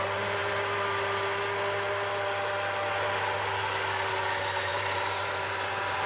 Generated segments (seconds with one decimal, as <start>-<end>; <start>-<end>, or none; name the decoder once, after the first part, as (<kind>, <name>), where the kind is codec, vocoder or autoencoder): 4.7-6.1 (vocoder, BigVGAN v2)